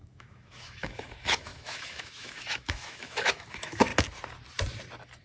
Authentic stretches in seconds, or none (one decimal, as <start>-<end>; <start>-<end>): 3.9-5.2